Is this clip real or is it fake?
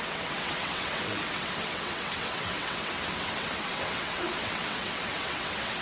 fake